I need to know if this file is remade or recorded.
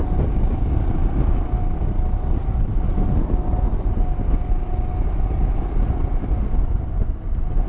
recorded